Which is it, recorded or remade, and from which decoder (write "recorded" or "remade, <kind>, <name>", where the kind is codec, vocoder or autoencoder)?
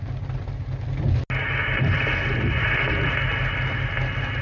recorded